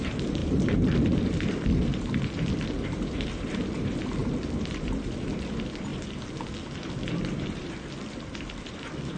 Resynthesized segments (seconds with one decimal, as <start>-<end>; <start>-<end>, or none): 0.0-5.9; 7.1-9.2